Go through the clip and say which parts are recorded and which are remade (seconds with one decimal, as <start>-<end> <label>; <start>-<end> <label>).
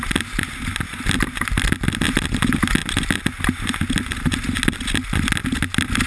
0.0-6.1 recorded